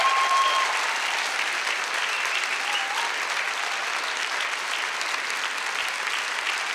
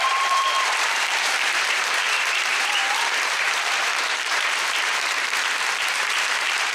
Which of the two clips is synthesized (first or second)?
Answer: second